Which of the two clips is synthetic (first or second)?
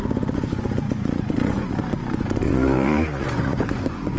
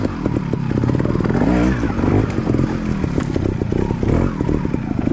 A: first